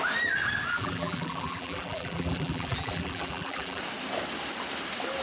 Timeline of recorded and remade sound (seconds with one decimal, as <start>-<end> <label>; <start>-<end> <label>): 0.0-0.7 recorded; 0.7-3.8 remade; 3.8-5.2 recorded